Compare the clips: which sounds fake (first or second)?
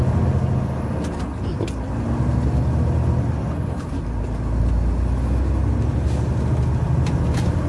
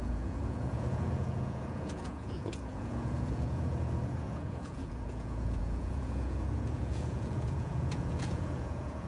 second